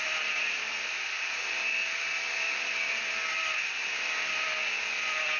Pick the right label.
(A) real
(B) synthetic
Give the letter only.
B